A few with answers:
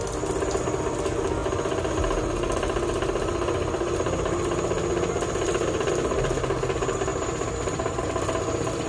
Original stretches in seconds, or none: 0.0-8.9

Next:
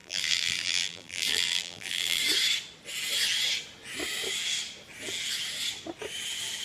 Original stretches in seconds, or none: 2.2-6.6

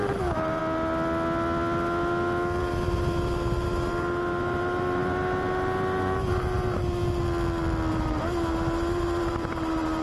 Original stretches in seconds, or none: 0.6-2.6; 7.0-7.9

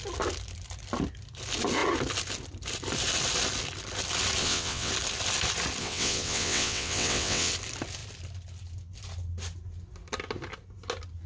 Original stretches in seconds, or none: 0.0-4.4; 4.9-5.8; 7.5-11.3